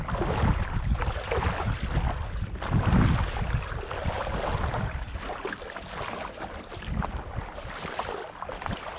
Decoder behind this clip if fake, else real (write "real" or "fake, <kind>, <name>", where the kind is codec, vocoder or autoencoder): real